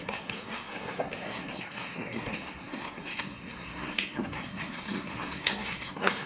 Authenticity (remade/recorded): remade